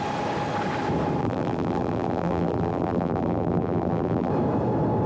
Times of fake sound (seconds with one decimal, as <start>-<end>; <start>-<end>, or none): 1.2-4.3